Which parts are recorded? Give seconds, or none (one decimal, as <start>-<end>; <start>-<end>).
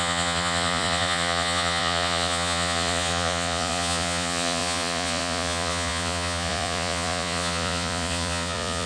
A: none